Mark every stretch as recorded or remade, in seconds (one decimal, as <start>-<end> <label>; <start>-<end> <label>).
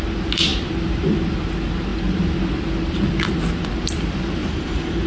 0.0-4.4 recorded; 4.4-5.1 remade